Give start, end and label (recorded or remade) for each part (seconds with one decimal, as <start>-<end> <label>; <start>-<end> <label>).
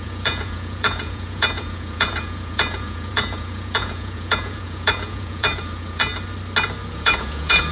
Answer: 0.0-6.1 remade; 6.1-6.9 recorded; 6.9-7.7 remade